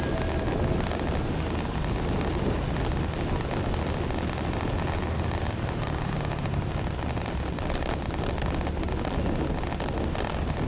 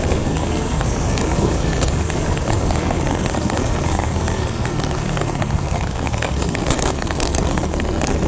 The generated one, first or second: second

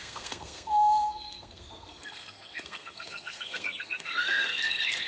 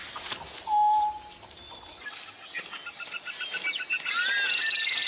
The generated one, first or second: first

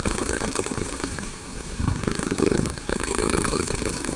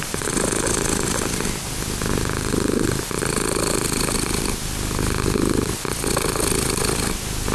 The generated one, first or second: first